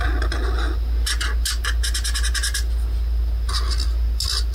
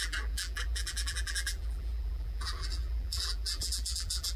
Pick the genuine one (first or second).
first